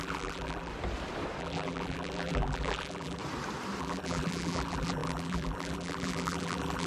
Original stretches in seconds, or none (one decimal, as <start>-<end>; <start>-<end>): 0.7-1.4; 3.2-3.8